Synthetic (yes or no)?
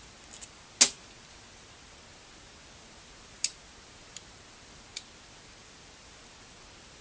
no